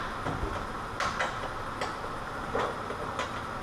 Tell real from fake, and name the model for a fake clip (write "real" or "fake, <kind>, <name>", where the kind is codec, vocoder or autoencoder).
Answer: real